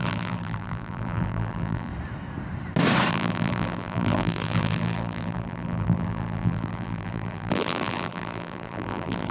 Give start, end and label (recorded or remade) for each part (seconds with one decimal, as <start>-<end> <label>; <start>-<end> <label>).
0.0-1.9 remade; 1.9-3.1 recorded; 3.1-9.3 remade

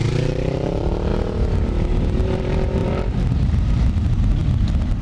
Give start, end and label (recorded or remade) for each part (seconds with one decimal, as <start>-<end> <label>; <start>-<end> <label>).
0.0-1.1 remade; 1.1-2.2 recorded; 2.2-4.4 remade; 4.4-5.0 recorded

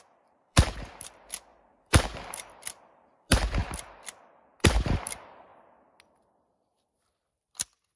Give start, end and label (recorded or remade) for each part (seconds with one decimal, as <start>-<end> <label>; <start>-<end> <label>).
0.0-3.6 remade; 3.6-4.6 recorded; 4.6-5.5 remade; 5.5-8.0 recorded

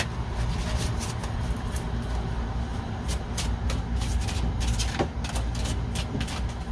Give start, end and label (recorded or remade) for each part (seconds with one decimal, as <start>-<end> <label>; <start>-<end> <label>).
0.0-1.2 recorded; 1.2-1.8 remade; 1.8-2.7 recorded; 2.7-3.3 remade; 3.3-6.7 recorded

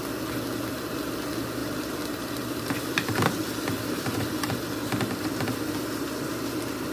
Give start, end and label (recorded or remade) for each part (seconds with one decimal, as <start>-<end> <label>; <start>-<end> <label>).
0.0-1.6 recorded; 1.6-5.7 remade; 5.7-6.9 recorded

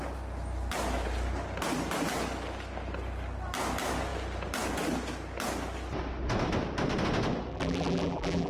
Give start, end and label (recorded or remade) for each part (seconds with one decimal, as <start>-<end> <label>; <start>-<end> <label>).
0.0-7.5 recorded; 7.5-8.5 remade

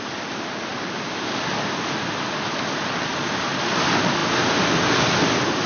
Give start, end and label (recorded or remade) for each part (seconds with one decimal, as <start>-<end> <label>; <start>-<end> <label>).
0.0-5.7 recorded

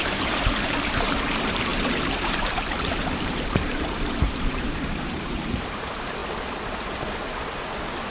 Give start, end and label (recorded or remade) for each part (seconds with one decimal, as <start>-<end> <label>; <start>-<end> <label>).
0.0-6.2 remade; 6.2-7.6 recorded; 7.6-8.1 remade